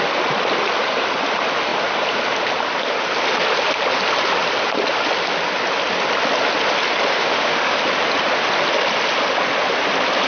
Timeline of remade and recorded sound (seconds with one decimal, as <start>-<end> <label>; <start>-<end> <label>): 0.0-7.1 recorded; 7.1-7.8 remade; 7.8-10.3 recorded